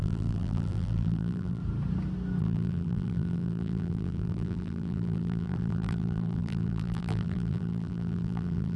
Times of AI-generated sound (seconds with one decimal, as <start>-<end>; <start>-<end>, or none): 0.0-1.6; 2.4-8.8